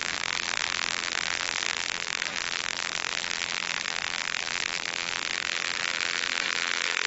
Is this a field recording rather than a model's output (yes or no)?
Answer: no